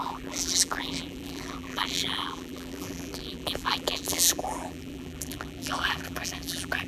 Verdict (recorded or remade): remade